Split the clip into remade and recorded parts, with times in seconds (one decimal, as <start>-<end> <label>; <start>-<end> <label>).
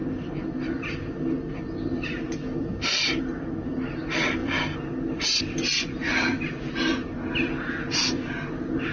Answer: 0.0-8.9 recorded